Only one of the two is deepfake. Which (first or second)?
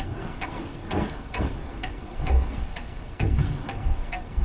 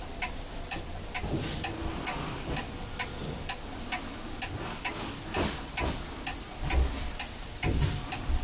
first